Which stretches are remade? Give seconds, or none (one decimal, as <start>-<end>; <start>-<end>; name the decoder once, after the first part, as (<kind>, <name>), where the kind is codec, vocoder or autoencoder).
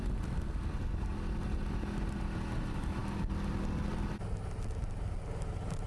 none